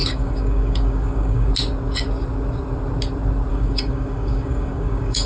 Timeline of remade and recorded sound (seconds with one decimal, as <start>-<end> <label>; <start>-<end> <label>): 0.0-1.5 remade; 1.5-3.5 recorded; 3.5-5.3 remade